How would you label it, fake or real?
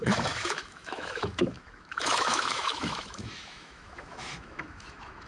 fake